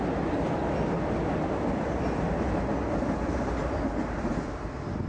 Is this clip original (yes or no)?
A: yes